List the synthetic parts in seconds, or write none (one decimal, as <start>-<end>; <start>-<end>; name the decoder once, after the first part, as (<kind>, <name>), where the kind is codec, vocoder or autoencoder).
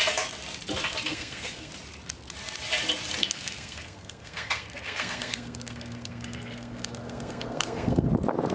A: 1.1-1.7 (codec, SNAC); 3.2-8.1